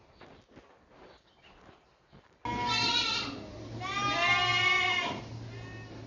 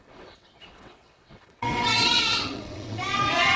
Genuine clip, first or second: first